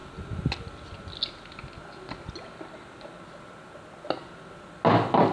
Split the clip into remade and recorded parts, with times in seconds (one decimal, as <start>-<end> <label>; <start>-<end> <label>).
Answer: 0.0-5.3 recorded